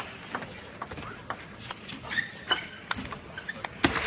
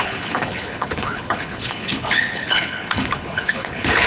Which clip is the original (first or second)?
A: first